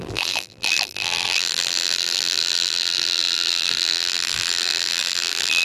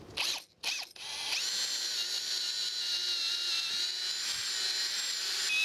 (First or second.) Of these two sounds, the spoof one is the first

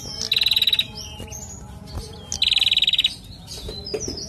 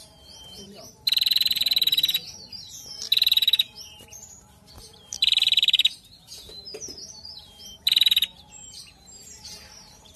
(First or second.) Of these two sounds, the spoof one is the second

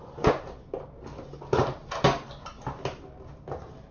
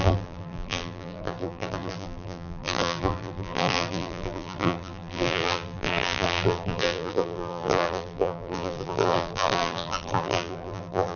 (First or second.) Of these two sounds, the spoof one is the second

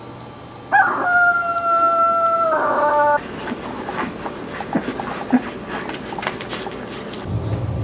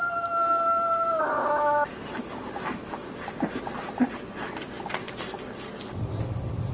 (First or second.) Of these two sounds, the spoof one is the second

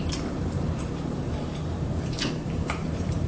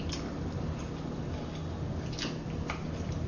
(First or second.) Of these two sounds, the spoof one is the first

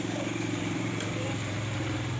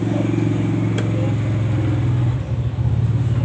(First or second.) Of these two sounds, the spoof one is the first